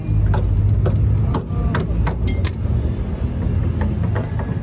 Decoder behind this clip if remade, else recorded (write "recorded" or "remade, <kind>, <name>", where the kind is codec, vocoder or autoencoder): recorded